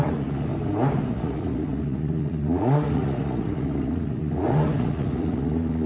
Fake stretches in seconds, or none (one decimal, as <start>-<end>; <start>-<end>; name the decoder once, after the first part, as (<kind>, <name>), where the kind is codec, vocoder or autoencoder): 0.0-0.5 (vocoder, Vocos); 1.1-5.9